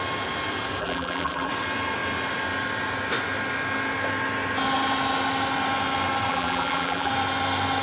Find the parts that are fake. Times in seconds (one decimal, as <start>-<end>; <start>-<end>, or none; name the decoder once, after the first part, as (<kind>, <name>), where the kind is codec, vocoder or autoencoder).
0.8-1.5 (vocoder, BigVGAN v2); 6.3-7.1